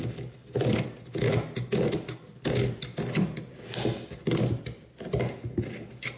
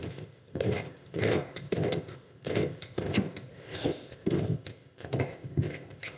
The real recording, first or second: first